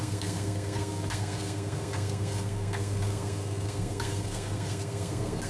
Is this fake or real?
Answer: fake